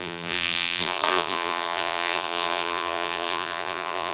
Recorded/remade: remade